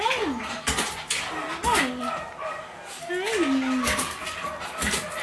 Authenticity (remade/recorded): recorded